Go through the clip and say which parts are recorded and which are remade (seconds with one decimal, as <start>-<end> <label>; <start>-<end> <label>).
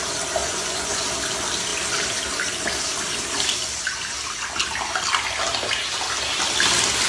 0.0-0.4 recorded; 0.4-1.0 remade; 1.0-7.1 recorded